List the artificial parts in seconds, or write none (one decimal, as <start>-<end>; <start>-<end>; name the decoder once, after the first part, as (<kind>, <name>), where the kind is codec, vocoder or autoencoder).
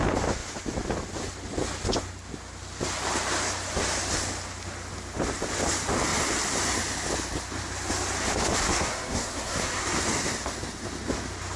8.7-9.8 (codec, SNAC)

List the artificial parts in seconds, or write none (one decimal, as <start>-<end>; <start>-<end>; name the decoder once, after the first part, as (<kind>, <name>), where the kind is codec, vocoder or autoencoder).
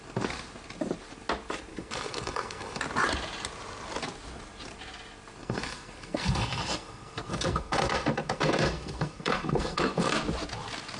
1.7-2.8 (codec, SNAC); 5.4-10.1